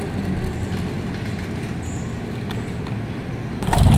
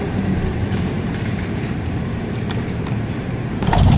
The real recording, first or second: first